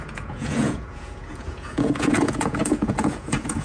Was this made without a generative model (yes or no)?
no